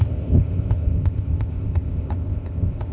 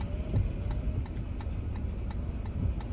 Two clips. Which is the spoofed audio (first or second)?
first